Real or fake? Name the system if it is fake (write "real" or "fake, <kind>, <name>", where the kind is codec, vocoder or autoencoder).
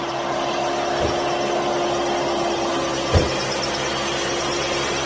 real